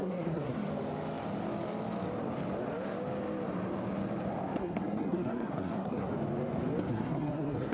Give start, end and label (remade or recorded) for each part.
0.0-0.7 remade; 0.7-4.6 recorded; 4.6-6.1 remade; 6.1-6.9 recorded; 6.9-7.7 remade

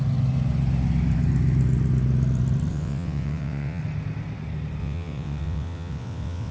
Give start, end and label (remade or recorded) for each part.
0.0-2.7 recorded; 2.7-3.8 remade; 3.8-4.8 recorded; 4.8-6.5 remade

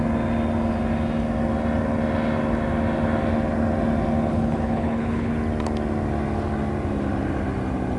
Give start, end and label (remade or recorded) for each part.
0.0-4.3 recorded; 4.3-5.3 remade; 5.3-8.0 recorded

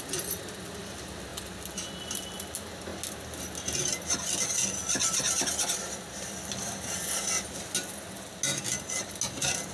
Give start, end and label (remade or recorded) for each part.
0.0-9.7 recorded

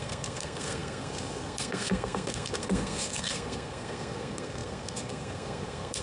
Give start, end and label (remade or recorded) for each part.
0.0-6.0 remade

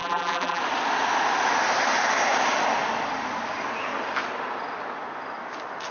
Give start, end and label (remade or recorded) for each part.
0.0-0.6 remade; 0.6-5.9 recorded

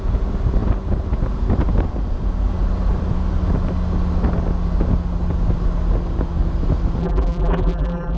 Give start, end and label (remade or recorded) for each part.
0.0-7.0 recorded; 7.0-8.2 remade